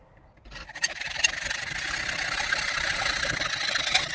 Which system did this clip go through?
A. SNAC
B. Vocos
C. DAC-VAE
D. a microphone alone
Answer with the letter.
D